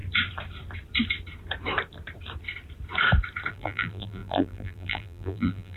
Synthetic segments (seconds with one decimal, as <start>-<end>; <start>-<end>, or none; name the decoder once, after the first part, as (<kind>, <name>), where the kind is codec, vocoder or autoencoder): 3.5-5.8 (vocoder, BigVGAN v2)